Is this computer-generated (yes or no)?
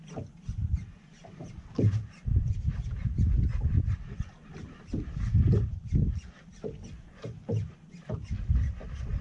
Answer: no